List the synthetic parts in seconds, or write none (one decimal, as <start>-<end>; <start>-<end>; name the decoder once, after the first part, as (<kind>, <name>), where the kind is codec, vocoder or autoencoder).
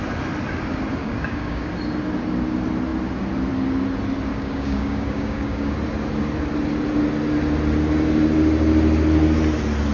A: 1.0-1.7 (codec, DAC); 4.3-5.7